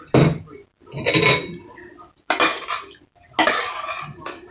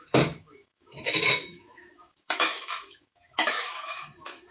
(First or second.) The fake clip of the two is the second